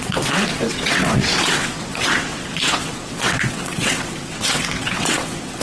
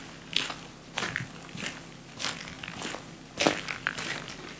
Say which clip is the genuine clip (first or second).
second